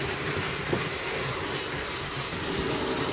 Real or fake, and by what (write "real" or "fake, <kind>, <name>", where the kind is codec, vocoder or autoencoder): real